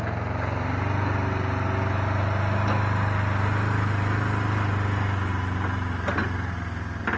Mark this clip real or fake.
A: real